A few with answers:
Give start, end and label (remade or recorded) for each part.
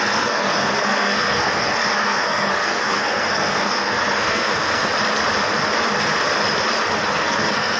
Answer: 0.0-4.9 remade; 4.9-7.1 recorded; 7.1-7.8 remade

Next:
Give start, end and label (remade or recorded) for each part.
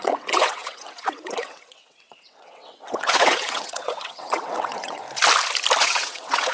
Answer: 0.0-5.0 remade; 5.0-5.8 recorded; 5.8-6.5 remade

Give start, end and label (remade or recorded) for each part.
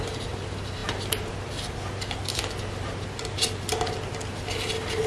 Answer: 0.0-5.1 recorded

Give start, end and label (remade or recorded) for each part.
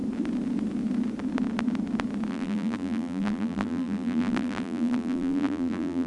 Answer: 0.0-2.3 recorded; 2.3-6.1 remade